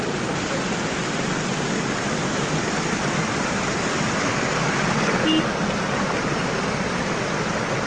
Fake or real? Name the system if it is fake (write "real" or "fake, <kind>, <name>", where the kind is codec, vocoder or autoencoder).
real